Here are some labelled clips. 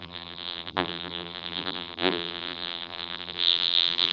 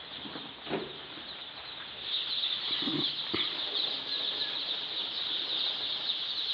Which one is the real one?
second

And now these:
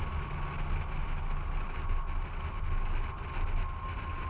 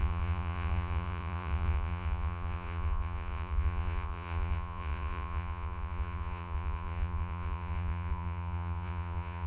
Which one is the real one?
first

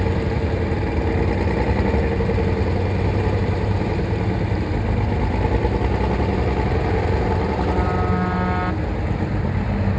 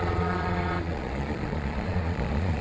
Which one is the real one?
first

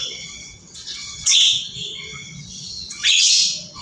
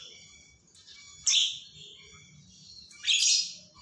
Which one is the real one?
second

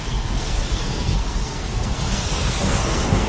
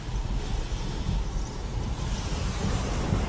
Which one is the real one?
second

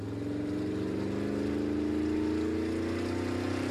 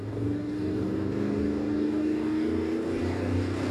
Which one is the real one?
first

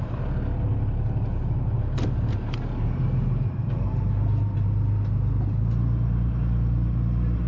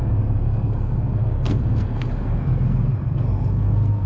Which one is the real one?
first